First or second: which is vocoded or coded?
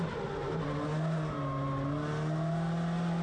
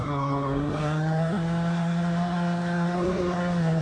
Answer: second